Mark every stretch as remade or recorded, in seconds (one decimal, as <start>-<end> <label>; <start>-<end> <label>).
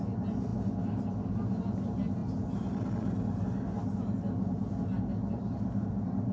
0.0-6.3 recorded